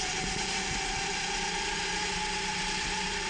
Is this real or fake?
fake